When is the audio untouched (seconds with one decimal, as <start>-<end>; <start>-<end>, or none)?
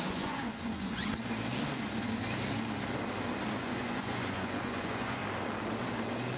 1.0-3.6; 5.2-6.4